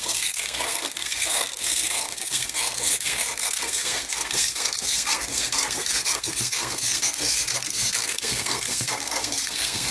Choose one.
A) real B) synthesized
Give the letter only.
B